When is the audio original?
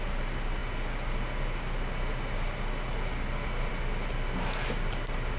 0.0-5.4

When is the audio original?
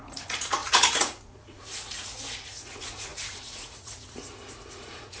none